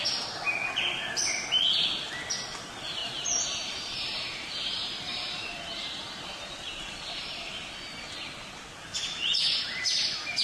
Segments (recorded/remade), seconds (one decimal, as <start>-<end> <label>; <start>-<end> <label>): 0.0-3.0 recorded; 3.0-6.9 remade; 6.9-10.4 recorded